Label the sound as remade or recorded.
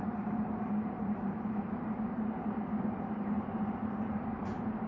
remade